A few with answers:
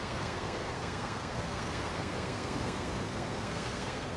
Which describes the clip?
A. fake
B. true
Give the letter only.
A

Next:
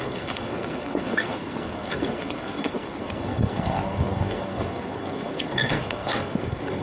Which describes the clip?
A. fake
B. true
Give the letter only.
A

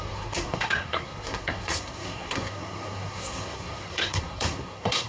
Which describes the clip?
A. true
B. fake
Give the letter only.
B